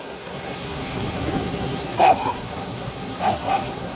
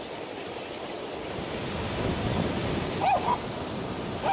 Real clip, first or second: second